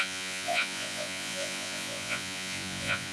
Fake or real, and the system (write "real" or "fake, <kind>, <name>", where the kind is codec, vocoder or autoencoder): fake, vocoder, Vocos